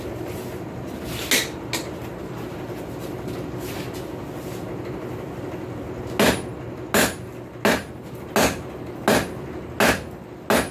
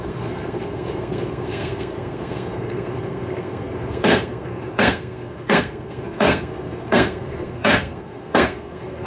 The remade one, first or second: second